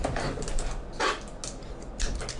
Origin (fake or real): real